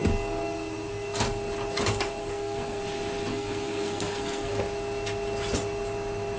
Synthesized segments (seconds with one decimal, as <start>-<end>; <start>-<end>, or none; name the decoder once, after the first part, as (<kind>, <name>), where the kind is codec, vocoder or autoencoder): 2.2-2.8 (codec, SNAC); 3.3-4.6